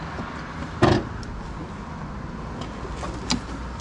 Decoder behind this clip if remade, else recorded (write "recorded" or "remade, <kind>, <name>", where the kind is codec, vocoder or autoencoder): recorded